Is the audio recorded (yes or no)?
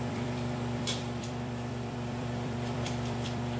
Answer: no